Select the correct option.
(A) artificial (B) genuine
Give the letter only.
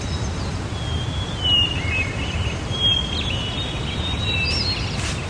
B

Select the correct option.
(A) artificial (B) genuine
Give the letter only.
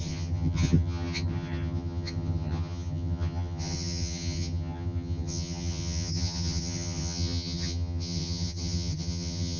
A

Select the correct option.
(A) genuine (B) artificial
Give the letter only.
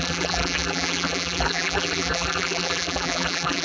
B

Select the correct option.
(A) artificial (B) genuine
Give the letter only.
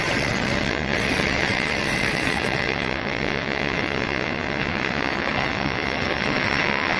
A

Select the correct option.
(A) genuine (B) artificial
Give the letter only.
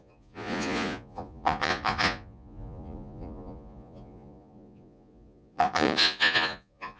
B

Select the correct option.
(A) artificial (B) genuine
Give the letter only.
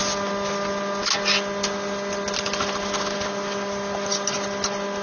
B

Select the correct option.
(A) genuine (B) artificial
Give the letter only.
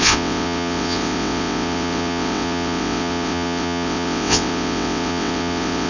B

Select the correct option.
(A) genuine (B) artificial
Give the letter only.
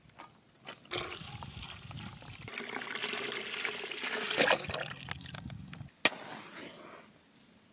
A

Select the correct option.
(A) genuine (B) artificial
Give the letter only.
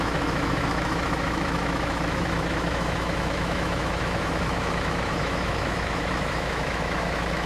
B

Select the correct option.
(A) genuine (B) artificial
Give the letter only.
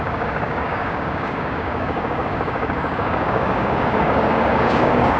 B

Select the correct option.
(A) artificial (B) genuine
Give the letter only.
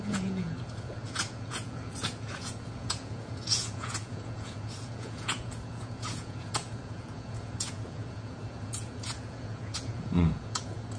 A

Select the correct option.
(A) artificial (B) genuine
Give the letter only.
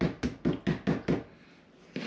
B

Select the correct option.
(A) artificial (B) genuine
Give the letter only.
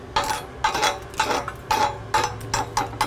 B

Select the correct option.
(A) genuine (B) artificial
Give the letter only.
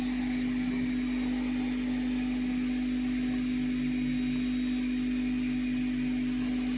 A